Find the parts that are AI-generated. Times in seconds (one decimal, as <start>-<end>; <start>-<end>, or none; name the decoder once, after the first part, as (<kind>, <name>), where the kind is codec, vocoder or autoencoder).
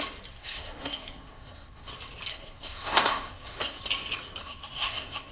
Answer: 0.4-1.9 (codec, SNAC); 2.3-3.8; 4.4-5.3